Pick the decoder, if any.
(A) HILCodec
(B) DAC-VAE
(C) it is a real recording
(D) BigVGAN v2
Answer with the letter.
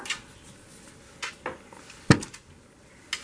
C